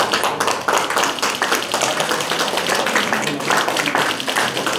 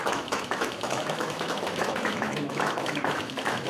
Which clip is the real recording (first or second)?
first